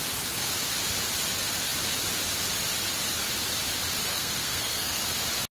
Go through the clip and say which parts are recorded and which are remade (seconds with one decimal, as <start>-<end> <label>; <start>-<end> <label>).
0.0-4.1 recorded; 4.1-5.0 remade; 5.0-5.5 recorded

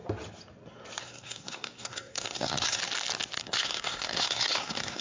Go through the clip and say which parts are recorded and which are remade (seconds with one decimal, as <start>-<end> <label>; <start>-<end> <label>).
0.0-1.0 recorded; 1.0-2.8 remade; 2.8-3.4 recorded; 3.4-5.0 remade

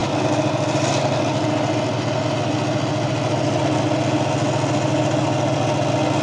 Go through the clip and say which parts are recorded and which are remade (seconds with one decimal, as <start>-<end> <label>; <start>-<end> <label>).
0.0-6.2 recorded

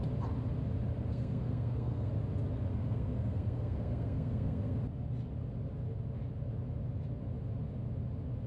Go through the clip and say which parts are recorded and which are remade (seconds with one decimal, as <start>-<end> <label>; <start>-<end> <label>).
0.0-1.1 recorded; 1.1-2.1 remade; 2.1-2.7 recorded; 2.7-4.8 remade; 4.8-8.5 recorded